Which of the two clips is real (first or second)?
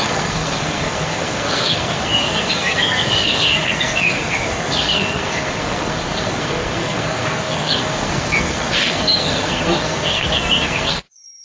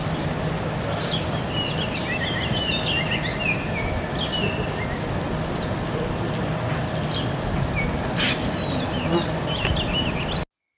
second